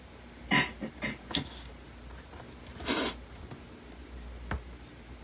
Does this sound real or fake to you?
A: real